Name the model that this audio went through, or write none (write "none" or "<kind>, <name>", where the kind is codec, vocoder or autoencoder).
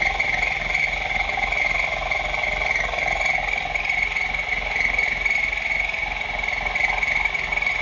none